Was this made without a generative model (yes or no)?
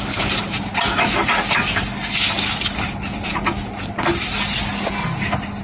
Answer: yes